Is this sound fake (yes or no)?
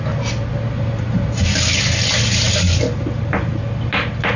no